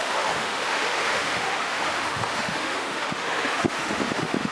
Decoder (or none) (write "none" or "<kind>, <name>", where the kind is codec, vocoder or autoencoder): autoencoder, DAC-VAE